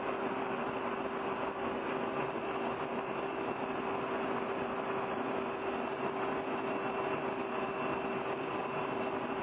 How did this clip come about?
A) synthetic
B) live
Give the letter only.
B